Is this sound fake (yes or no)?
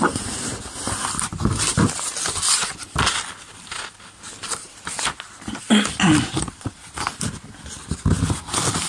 no